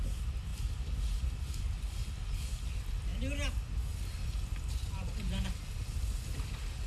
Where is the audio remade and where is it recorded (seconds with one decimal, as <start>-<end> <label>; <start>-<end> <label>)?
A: 0.0-6.9 recorded